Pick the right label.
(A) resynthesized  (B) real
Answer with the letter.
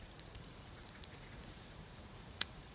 A